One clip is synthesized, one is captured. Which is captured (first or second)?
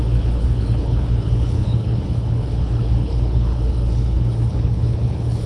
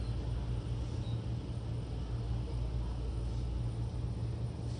second